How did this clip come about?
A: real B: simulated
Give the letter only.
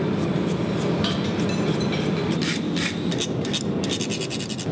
A